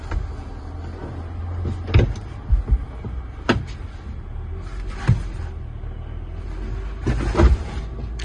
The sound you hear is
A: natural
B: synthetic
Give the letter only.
A